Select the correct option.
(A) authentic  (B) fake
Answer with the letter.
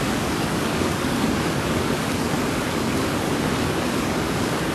B